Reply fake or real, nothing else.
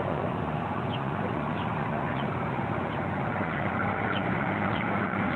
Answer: fake